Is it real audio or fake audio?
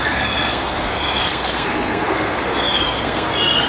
fake